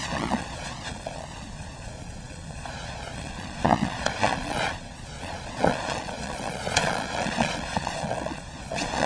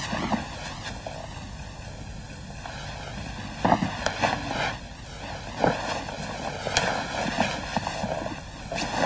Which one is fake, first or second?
first